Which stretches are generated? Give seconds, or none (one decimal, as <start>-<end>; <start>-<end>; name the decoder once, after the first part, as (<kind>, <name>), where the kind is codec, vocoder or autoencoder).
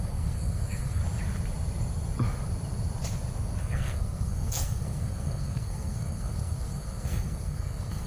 0.0-1.0 (codec, SNAC); 3.6-8.1